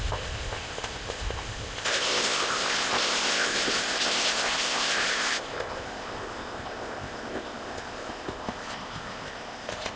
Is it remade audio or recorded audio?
remade